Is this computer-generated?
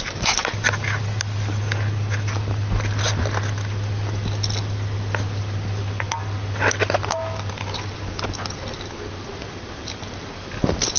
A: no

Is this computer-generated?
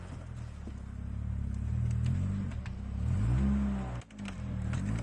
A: no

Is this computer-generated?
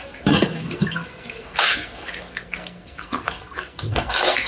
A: yes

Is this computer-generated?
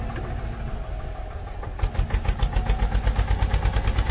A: no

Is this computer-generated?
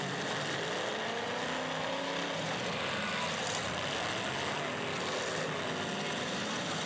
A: no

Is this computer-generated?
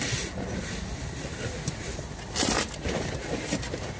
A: no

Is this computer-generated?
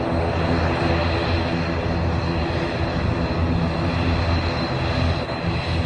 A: no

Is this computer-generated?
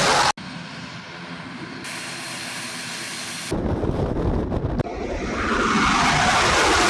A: no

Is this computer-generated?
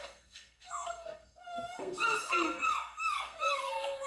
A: yes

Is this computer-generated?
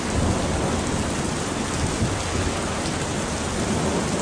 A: no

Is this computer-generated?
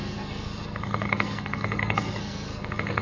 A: yes